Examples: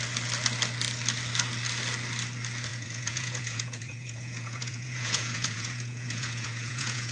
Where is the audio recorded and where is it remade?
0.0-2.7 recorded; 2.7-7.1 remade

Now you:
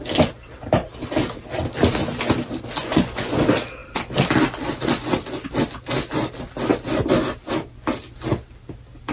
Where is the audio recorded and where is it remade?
0.0-2.8 recorded; 2.8-3.4 remade; 3.4-9.1 recorded

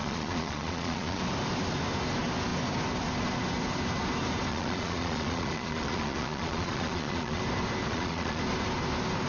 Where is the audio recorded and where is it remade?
0.0-1.2 remade; 1.2-4.5 recorded; 4.5-7.4 remade; 7.4-7.9 recorded; 7.9-8.4 remade; 8.4-9.3 recorded